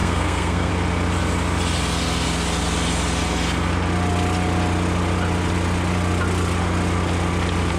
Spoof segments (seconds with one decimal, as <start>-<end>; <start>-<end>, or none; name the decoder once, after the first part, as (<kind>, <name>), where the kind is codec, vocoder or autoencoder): 0.0-0.7 (codec, SNAC)